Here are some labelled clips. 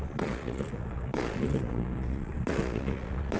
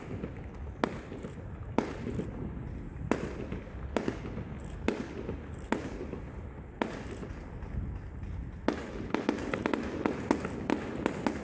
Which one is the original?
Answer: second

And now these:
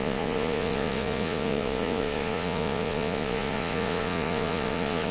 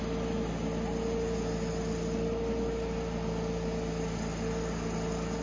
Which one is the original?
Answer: second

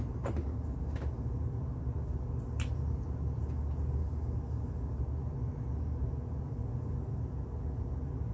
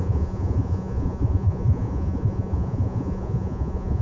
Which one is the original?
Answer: first